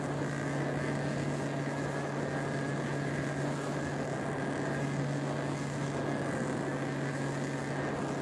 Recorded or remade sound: recorded